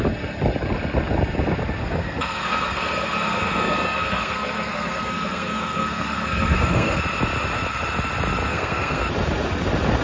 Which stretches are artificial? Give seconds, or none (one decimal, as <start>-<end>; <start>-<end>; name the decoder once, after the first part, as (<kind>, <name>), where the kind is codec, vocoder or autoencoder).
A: 1.8-7.0 (codec, SNAC); 8.5-9.0

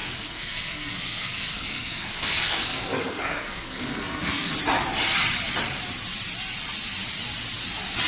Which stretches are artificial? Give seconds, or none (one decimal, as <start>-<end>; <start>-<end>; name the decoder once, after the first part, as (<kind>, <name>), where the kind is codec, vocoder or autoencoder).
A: 0.0-4.5 (codec, SNAC)

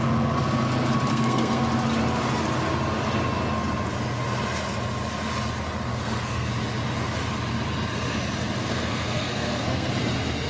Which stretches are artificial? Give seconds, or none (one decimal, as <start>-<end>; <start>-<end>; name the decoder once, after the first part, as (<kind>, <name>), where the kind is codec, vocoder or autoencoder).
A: 1.1-1.6 (codec, SNAC); 5.9-6.5; 8.6-9.9